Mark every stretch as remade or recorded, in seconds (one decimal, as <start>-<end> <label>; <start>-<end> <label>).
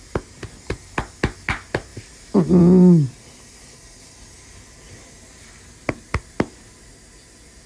0.0-7.7 recorded